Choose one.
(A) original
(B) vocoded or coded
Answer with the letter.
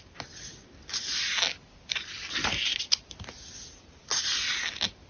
A